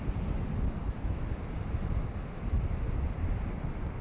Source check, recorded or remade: recorded